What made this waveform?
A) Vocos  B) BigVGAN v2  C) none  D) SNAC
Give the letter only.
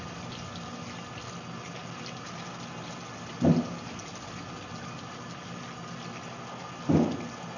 C